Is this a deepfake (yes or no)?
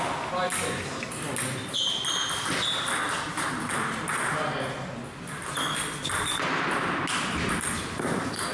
no